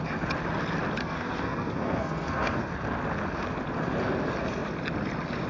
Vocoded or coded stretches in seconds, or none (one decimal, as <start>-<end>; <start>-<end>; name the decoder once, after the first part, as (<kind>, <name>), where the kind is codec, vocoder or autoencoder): 1.0-2.7 (codec, SNAC)